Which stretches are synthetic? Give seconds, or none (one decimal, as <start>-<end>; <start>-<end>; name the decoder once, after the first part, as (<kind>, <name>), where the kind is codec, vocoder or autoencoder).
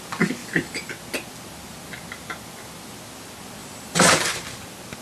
0.4-0.9 (vocoder, BigVGAN v2); 3.6-4.1